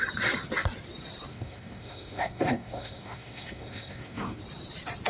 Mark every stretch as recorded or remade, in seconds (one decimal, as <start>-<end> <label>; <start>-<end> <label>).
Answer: 0.0-1.3 recorded; 1.3-4.4 remade; 4.4-5.1 recorded

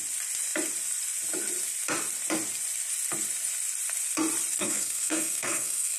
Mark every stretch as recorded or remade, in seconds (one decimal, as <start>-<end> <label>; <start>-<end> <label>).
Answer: 0.0-4.6 recorded; 4.6-6.0 remade

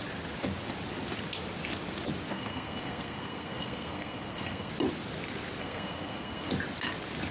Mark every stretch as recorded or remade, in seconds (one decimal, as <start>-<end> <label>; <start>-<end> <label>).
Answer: 0.0-2.3 recorded; 2.3-4.7 remade; 4.7-5.6 recorded; 5.6-6.5 remade; 6.5-7.3 recorded